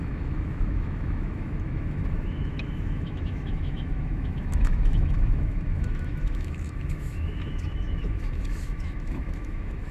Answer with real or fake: fake